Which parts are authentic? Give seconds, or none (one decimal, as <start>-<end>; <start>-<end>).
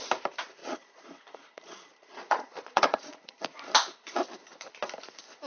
0.0-0.6; 3.4-5.5